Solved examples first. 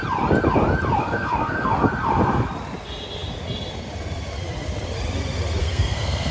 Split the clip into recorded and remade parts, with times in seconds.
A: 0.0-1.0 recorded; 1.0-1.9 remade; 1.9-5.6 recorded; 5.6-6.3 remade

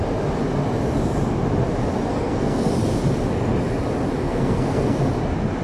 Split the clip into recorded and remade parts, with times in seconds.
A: 0.0-2.1 recorded; 2.1-2.7 remade; 2.7-4.2 recorded; 4.2-5.0 remade; 5.0-5.6 recorded